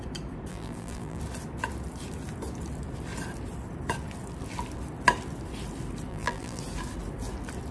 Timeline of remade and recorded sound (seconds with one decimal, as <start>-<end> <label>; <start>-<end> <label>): 0.0-0.5 recorded; 0.5-1.2 remade; 1.2-6.1 recorded; 6.1-6.6 remade; 6.6-7.7 recorded